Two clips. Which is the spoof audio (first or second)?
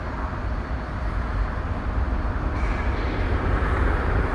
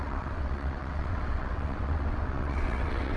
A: second